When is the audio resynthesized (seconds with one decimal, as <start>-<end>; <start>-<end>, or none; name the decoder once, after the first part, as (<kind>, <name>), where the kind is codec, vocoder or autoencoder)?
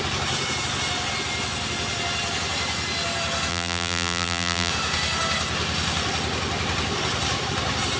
3.5-4.7 (vocoder, BigVGAN v2)